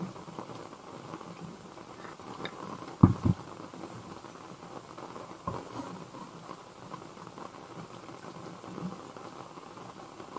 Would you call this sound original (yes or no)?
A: yes